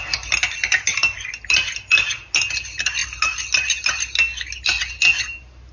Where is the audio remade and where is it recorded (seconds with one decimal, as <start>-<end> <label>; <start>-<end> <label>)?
0.0-5.7 recorded